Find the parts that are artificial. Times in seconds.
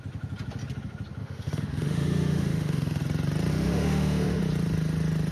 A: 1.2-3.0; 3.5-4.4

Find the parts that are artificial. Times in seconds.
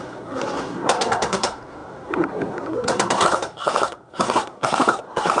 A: 0.0-5.4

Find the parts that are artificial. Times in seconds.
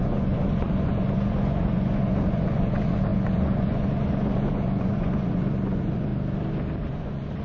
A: 0.0-6.1; 6.9-7.4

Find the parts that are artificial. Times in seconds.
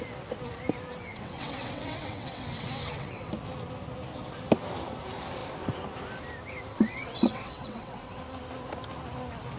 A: 1.0-3.3; 6.7-8.2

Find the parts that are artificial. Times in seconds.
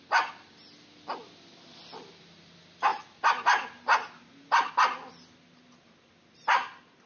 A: none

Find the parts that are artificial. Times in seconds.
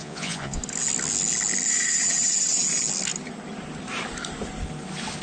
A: 0.0-0.6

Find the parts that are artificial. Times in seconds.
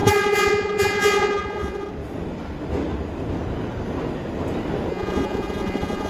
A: 0.0-1.9; 4.9-6.1